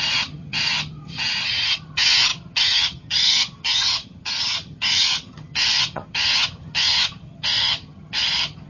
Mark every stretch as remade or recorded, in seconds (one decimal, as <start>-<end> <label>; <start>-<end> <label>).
0.0-8.7 remade